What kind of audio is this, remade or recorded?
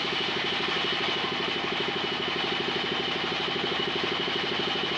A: recorded